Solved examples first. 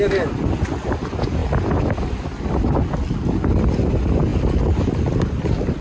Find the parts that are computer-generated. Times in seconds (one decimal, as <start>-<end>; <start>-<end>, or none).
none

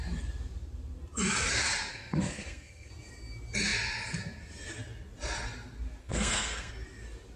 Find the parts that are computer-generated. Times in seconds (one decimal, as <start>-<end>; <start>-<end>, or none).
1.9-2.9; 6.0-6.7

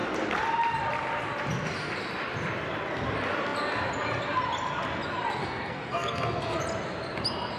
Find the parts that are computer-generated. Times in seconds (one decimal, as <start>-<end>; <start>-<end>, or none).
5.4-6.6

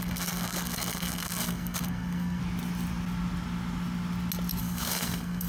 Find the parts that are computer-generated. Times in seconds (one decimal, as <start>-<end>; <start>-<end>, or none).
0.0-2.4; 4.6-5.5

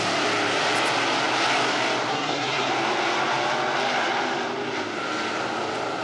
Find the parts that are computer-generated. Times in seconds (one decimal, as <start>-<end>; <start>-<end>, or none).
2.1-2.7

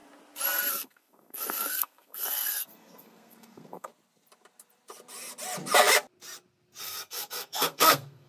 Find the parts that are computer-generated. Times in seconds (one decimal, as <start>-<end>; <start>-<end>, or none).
0.7-3.9; 6.8-8.3

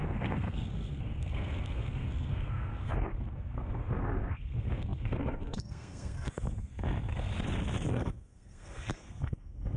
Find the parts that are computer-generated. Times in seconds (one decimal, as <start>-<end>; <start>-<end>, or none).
0.0-7.3; 7.9-9.8